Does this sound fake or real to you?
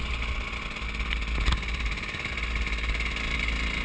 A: real